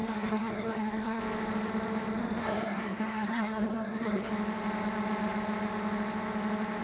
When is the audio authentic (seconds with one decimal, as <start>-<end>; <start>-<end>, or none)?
1.2-2.4; 4.3-6.8